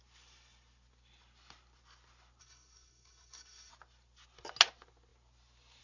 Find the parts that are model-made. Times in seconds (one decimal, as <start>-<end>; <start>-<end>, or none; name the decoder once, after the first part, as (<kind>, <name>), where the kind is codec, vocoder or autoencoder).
2.4-3.7 (codec, SNAC)